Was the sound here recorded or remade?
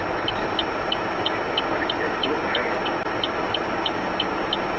recorded